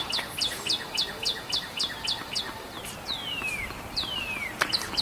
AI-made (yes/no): no